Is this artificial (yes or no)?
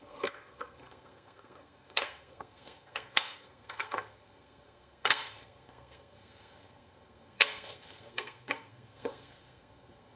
yes